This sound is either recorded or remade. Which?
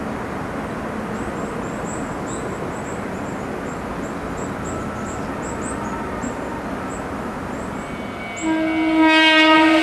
recorded